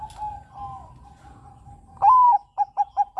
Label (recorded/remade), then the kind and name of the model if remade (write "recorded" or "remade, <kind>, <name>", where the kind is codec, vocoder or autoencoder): recorded